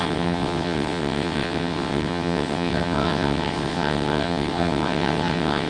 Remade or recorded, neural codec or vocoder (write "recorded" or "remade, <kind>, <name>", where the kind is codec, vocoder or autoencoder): remade, vocoder, WaveNeXt